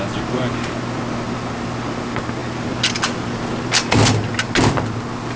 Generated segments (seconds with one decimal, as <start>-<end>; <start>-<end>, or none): none